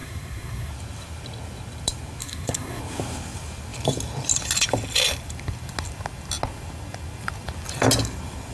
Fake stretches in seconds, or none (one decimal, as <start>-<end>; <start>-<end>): 0.0-0.7; 2.2-2.8